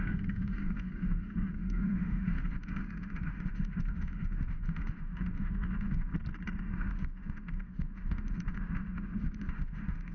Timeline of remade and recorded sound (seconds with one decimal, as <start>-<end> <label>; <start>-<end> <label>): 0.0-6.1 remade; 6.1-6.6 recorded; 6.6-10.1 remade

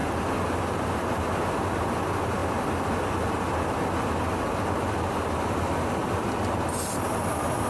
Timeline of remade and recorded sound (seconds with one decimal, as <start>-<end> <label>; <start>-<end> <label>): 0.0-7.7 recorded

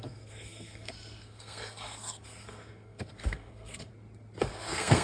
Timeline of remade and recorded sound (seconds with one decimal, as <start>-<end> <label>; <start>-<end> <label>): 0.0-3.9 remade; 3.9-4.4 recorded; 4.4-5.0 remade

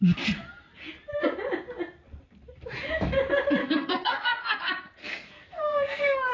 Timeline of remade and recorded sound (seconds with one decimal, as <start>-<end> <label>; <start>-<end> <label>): 0.0-3.6 recorded; 3.6-4.6 remade; 4.6-5.0 recorded; 5.0-6.3 remade